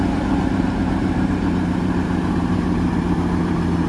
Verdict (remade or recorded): remade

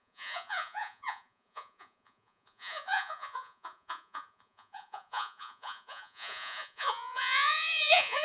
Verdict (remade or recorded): remade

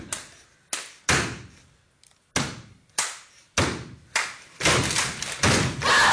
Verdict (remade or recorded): recorded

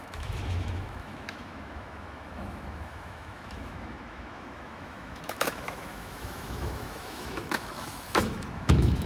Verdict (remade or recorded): remade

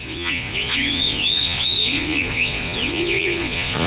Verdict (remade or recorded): remade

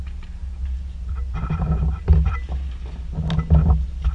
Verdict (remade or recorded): recorded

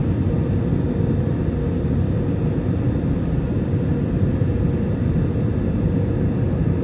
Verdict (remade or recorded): recorded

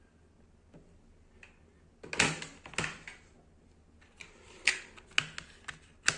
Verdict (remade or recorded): recorded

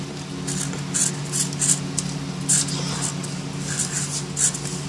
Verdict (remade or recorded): recorded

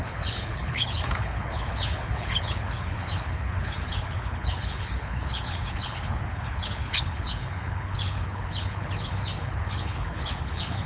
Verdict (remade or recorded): remade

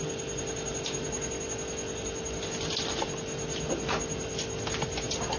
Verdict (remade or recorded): recorded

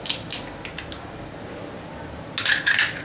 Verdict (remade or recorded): recorded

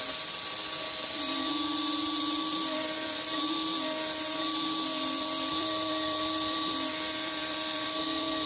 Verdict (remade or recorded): remade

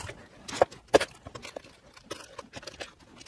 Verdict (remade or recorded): recorded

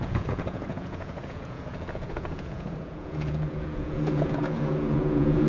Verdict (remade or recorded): remade